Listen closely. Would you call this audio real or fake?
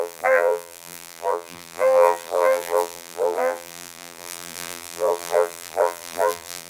fake